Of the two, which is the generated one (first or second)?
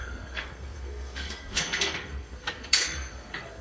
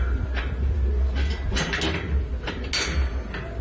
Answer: first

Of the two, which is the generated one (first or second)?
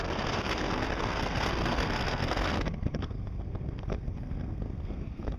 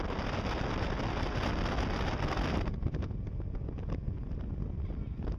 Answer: first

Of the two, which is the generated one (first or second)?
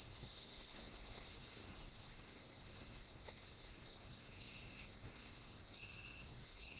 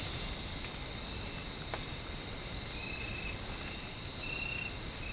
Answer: first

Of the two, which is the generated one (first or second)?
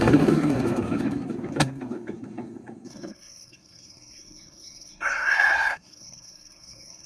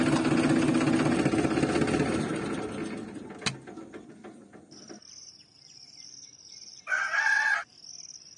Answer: first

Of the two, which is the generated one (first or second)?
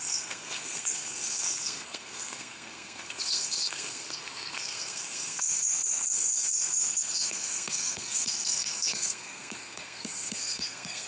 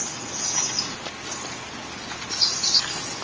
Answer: first